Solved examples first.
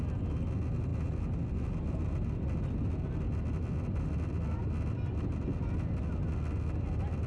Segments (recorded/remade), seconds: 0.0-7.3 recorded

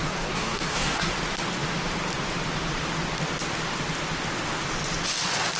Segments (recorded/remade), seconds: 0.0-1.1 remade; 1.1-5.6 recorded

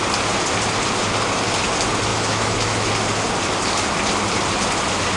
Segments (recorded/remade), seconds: 0.0-2.1 recorded; 2.1-2.9 remade; 2.9-5.2 recorded

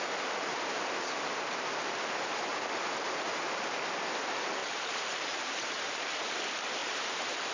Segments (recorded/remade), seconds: 0.0-4.6 recorded; 4.6-6.3 remade; 6.3-6.8 recorded; 6.8-7.5 remade